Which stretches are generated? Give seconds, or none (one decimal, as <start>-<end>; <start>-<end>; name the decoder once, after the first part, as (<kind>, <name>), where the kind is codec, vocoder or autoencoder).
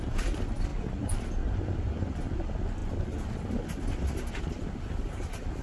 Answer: 0.7-1.3 (vocoder, BigVGAN v2)